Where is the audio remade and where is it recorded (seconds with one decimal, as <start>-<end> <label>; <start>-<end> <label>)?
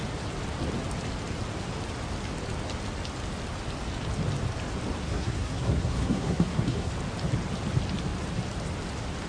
0.0-5.0 recorded; 5.0-6.9 remade; 6.9-9.3 recorded